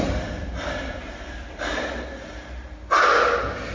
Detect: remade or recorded recorded